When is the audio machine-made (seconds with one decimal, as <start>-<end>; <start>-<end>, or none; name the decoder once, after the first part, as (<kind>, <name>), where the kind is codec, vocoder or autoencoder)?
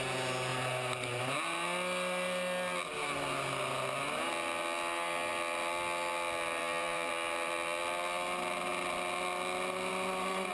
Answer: 6.6-7.1 (vocoder, BigVGAN v2)